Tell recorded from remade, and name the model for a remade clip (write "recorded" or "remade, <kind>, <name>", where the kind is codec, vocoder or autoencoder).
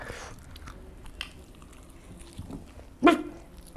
recorded